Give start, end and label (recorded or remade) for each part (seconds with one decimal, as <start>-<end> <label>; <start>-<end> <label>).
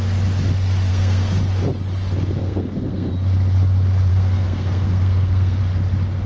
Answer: 0.0-0.9 recorded; 0.9-1.4 remade; 1.4-2.4 recorded; 2.4-3.1 remade; 3.1-4.1 recorded; 4.1-5.6 remade; 5.6-6.3 recorded